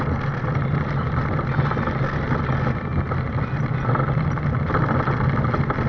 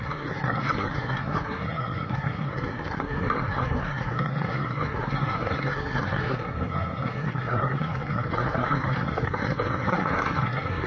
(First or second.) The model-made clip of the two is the second